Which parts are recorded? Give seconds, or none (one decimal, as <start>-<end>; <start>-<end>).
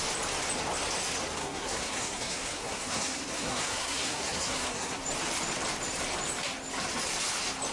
0.0-1.4; 5.0-7.7